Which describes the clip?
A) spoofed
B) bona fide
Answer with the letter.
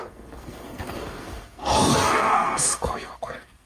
A